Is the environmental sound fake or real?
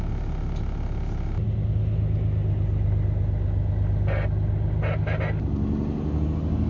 real